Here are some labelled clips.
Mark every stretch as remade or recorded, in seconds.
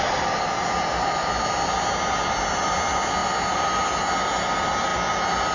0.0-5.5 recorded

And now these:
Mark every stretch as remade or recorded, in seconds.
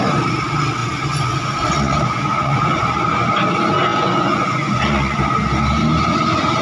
0.0-0.8 recorded; 0.8-2.9 remade; 2.9-3.9 recorded; 3.9-5.2 remade; 5.2-6.6 recorded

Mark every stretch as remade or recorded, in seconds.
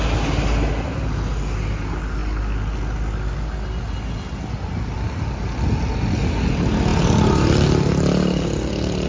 0.0-9.1 recorded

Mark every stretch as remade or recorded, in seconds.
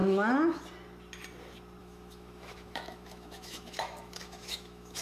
0.0-0.6 remade; 0.6-1.8 recorded; 1.8-5.0 remade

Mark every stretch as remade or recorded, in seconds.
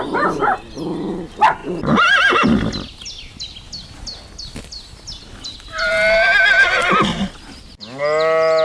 0.0-8.6 recorded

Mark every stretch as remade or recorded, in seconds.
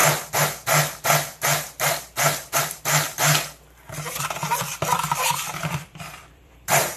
0.0-4.2 recorded; 4.2-7.0 remade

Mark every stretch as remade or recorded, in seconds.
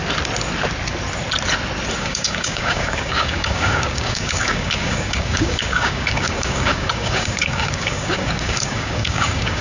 0.0-2.0 recorded; 2.0-9.6 remade